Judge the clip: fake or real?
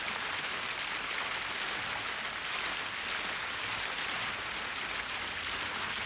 real